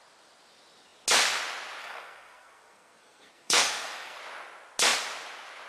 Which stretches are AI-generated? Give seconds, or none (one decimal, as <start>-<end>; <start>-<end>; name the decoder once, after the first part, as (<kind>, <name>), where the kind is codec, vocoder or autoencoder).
1.8-4.2 (codec, SNAC)